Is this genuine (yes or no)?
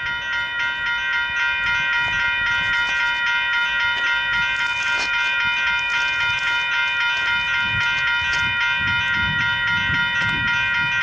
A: yes